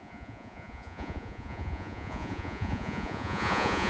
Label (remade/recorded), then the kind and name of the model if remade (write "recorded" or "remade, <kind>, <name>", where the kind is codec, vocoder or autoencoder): remade, vocoder, Vocos